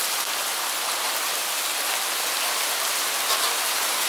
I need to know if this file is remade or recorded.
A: recorded